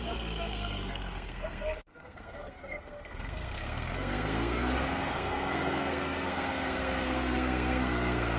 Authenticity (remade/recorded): remade